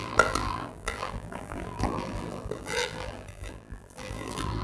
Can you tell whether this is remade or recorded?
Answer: remade